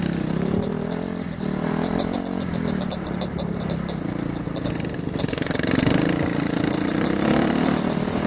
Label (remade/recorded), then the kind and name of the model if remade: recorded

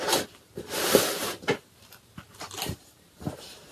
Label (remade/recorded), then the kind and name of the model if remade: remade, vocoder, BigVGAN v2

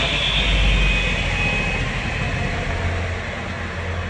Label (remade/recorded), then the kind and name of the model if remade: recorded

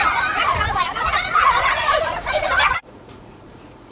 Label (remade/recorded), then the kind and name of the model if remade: remade, vocoder, Vocos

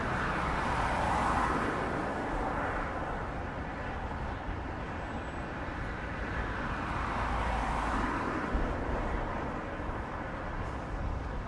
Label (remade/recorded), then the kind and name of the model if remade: recorded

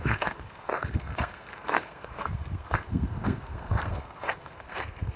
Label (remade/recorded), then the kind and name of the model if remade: remade, codec, SNAC